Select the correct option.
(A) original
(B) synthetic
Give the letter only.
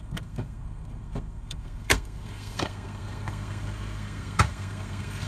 B